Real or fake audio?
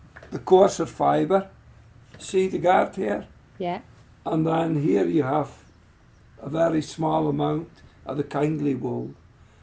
real